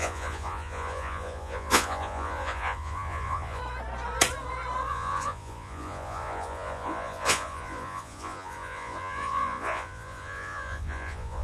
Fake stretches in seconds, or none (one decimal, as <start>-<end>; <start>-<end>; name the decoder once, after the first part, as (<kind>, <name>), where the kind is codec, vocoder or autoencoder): 0.0-3.6 (vocoder, Vocos); 4.9-11.4

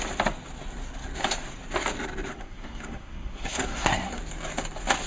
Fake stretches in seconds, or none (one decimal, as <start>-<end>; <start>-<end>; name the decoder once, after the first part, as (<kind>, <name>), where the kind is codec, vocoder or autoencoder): 2.3-4.2 (codec, SNAC)